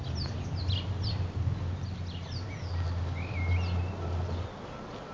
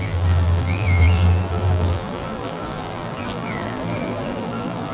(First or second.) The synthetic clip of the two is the second